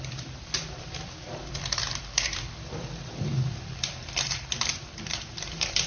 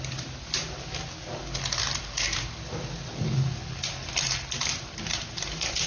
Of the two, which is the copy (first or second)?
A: first